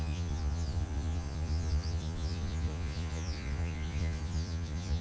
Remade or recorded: remade